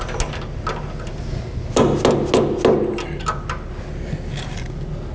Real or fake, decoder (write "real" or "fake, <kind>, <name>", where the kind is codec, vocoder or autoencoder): real